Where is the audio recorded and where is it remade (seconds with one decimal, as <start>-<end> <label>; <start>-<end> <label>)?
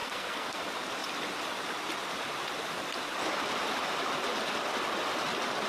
0.0-0.6 remade; 0.6-5.7 recorded